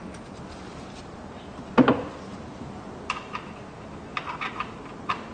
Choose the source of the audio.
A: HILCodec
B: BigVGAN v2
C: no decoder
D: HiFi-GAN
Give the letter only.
C